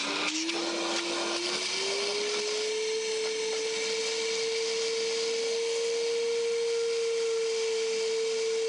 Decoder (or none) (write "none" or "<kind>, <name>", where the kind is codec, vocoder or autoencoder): none